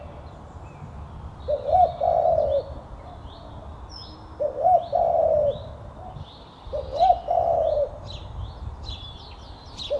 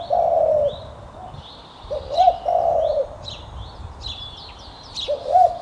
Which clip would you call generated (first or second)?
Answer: second